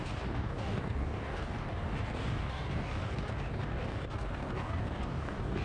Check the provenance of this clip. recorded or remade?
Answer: remade